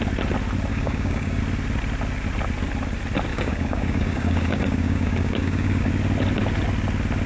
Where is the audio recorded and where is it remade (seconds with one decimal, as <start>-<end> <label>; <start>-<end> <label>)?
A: 0.0-0.7 recorded; 0.7-1.4 remade; 1.4-3.3 recorded; 3.3-5.9 remade; 5.9-7.3 recorded